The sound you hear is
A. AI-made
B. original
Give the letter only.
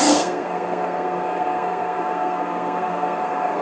A